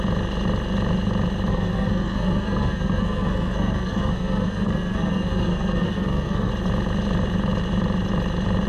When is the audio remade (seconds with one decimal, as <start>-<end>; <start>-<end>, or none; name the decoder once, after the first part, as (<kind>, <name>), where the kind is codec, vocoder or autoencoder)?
1.5-6.5 (codec, SNAC)